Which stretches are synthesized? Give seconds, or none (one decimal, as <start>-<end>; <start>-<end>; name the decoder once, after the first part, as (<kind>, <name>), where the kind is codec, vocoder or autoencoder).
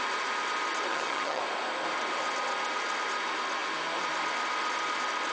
0.9-1.4 (vocoder, HiFi-GAN)